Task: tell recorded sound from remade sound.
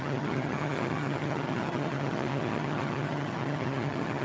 remade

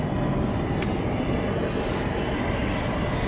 recorded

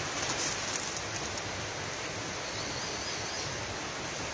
recorded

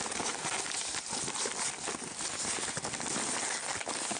recorded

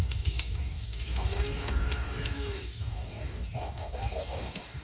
remade